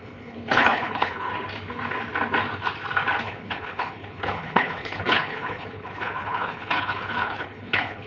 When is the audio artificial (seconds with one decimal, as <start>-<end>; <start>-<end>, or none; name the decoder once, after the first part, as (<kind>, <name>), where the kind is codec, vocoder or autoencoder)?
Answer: 0.0-1.3 (codec, HILCodec); 3.2-8.1